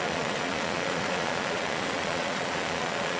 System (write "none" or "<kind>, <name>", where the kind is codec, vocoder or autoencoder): vocoder, Vocos